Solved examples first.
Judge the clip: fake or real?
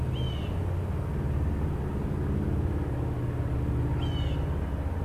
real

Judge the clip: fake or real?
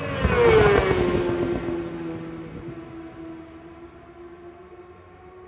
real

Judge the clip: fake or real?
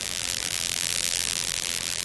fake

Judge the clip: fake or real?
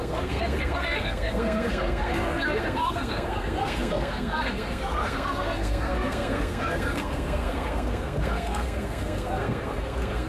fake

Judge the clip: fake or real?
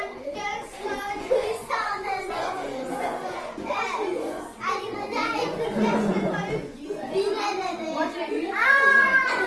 fake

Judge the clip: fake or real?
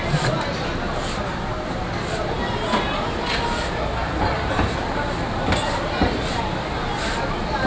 real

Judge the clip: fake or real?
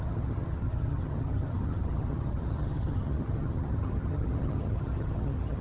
fake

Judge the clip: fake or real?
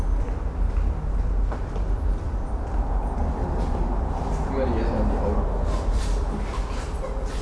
real